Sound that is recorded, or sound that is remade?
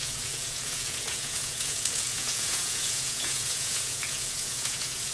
remade